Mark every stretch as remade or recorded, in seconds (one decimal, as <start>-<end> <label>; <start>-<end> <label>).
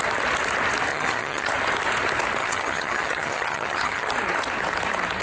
0.0-0.9 recorded; 0.9-1.5 remade; 1.5-2.4 recorded; 2.4-4.1 remade; 4.1-5.2 recorded